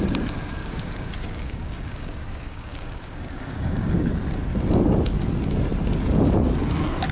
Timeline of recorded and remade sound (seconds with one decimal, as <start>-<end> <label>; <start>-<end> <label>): 0.0-0.6 recorded; 0.6-4.1 remade; 4.1-7.1 recorded